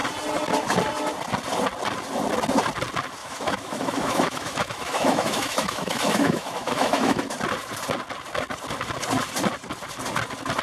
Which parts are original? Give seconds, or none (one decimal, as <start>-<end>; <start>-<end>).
0.0-3.2; 7.2-10.6